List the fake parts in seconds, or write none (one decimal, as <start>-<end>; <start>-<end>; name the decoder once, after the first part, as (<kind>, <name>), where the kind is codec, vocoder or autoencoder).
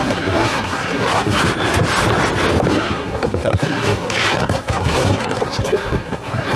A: 0.0-1.4 (codec, SNAC); 2.7-6.6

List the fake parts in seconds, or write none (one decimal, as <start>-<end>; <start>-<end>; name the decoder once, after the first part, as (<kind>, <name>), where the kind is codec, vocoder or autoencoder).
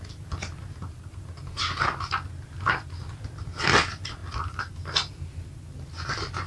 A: none